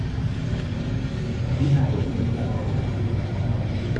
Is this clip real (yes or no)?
yes